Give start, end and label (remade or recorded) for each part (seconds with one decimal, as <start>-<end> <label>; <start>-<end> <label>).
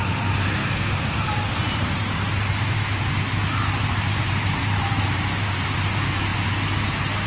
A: 0.0-0.6 remade; 0.6-1.6 recorded; 1.6-2.0 remade; 2.0-4.6 recorded; 4.6-6.3 remade; 6.3-7.3 recorded